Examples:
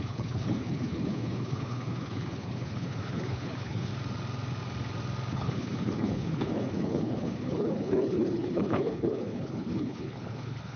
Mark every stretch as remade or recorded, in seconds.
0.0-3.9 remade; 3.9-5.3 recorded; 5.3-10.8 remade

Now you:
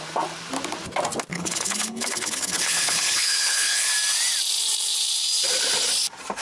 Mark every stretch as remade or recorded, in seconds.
0.0-1.3 recorded; 1.3-3.9 remade; 3.9-6.4 recorded

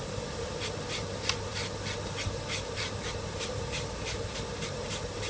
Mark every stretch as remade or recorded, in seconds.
0.0-5.3 recorded

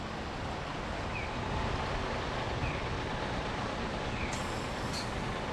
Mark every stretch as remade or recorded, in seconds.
0.0-5.5 recorded

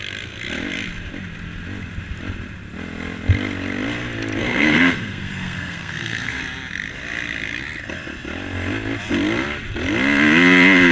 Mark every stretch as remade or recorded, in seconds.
0.0-4.4 recorded; 4.4-6.4 remade; 6.4-10.9 recorded

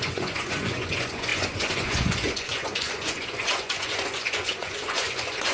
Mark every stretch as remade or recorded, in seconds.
0.0-5.5 remade

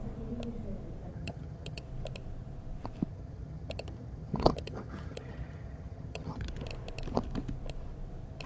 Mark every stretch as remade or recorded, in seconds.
0.0-1.1 recorded; 1.1-1.8 remade; 1.8-3.1 recorded; 3.1-6.5 remade; 6.5-8.5 recorded

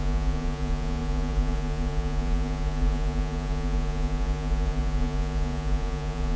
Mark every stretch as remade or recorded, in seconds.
0.0-6.4 remade